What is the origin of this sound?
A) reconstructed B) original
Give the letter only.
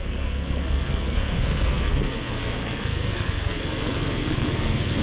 A